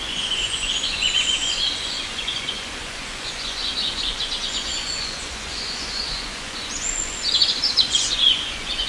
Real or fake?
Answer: fake